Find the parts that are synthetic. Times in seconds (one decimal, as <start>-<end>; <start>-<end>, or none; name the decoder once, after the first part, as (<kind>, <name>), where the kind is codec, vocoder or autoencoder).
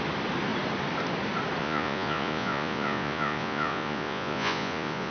1.6-5.1 (vocoder, Vocos)